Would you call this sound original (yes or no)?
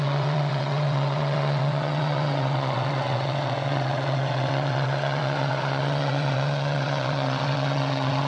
no